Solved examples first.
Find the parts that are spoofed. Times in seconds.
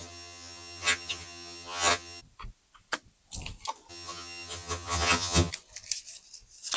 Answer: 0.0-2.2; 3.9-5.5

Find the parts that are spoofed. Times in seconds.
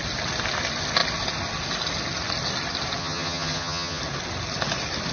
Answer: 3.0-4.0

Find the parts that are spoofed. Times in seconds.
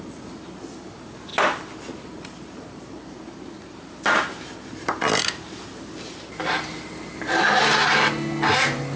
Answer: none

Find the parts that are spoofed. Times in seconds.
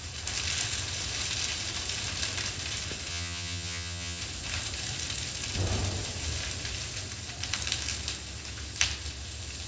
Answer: 3.1-4.2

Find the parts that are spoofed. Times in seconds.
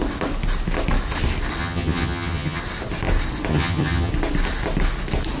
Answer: 1.6-2.6; 3.5-4.1